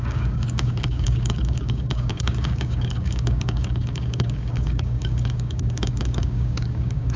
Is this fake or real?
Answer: fake